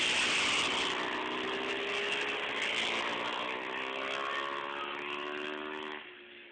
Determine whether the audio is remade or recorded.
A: recorded